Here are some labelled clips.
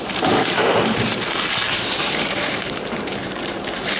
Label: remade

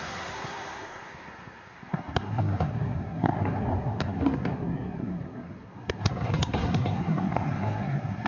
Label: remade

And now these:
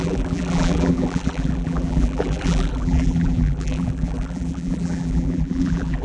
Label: remade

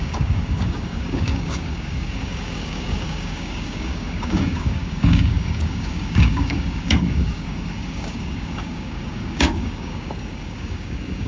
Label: remade